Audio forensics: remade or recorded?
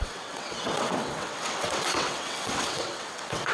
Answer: remade